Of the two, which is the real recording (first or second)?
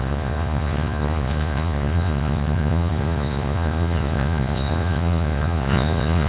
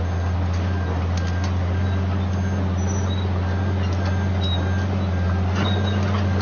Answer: second